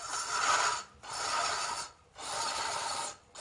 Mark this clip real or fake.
real